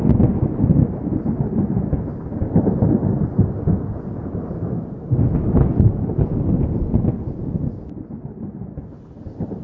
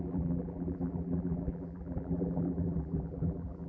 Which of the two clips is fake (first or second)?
second